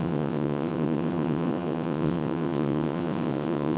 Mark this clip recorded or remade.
remade